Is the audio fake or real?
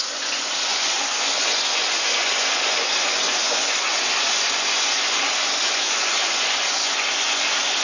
fake